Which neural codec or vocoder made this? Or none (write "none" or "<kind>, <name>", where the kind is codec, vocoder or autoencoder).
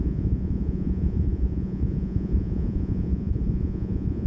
vocoder, Vocos